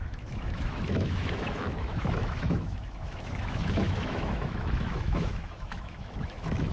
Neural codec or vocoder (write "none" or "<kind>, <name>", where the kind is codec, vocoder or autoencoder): autoencoder, DAC-VAE